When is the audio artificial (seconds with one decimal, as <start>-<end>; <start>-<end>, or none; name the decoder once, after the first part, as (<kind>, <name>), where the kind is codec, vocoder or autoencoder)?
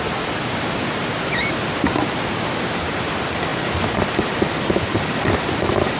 0.8-3.1 (vocoder, BigVGAN v2)